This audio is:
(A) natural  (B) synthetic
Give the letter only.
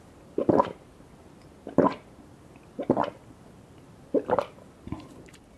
A